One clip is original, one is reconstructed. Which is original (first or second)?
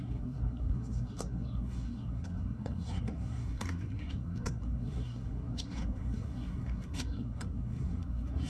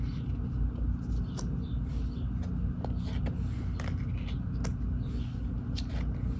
second